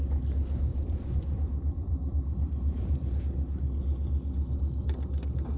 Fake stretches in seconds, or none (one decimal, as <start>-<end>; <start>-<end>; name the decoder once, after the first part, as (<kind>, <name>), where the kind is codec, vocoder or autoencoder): 0.7-3.2 (vocoder, BigVGAN v2)